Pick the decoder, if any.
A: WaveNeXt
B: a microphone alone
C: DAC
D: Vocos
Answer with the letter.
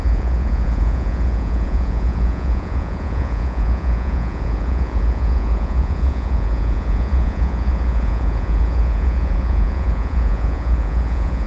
D